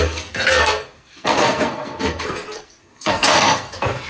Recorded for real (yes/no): no